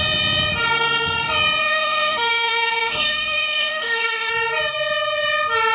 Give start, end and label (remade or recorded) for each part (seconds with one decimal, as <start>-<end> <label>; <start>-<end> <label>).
0.0-1.6 recorded; 1.6-4.3 remade; 4.3-5.7 recorded